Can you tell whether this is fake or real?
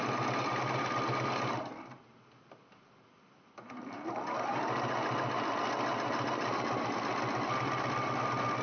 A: real